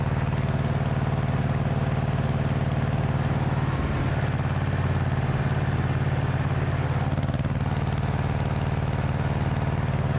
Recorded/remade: recorded